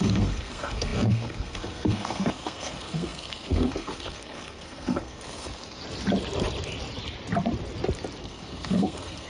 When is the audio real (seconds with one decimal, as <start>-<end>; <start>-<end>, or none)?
5.8-8.2